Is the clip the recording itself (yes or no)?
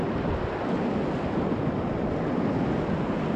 yes